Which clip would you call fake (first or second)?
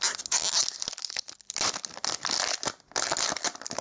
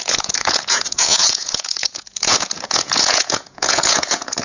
second